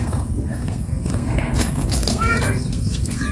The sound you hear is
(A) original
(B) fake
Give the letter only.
B